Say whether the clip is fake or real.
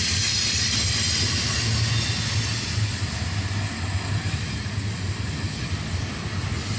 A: real